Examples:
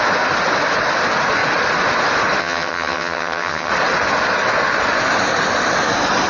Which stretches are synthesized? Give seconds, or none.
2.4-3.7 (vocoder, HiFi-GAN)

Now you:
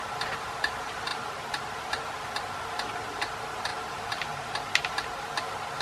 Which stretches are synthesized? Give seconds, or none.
1.1-1.9 (vocoder, BigVGAN v2); 3.7-5.2

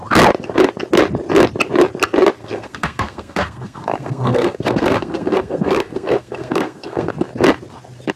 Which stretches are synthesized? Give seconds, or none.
2.4-7.1 (codec, SNAC)

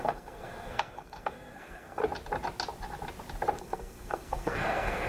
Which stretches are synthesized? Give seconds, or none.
0.0-2.0 (codec, SNAC); 3.6-5.1

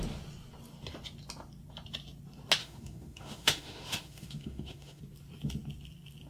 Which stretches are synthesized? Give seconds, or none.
2.6-5.0 (autoencoder, DAC-VAE)